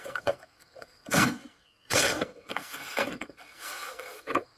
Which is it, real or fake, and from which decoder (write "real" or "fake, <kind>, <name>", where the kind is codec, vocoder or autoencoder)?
fake, codec, SNAC